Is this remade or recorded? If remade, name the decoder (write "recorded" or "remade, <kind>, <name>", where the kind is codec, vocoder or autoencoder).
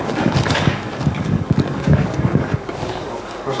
remade, codec, DAC